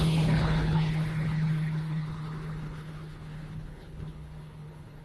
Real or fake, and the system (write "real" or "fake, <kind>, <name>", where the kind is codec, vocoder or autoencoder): fake, codec, HILCodec